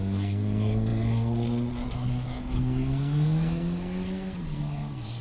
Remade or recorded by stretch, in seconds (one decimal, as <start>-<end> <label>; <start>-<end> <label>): 0.0-5.2 remade